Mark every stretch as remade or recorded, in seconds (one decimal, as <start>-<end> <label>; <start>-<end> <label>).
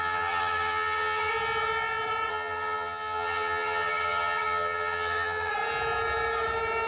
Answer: 0.0-1.3 remade; 1.3-2.3 recorded; 2.3-5.5 remade; 5.5-6.9 recorded